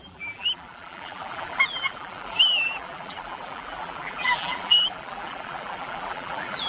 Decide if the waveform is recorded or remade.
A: remade